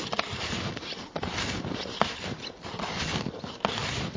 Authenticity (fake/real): real